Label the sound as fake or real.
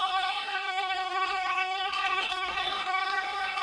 fake